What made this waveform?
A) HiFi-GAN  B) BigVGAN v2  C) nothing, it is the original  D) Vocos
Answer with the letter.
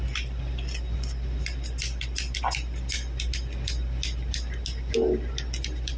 C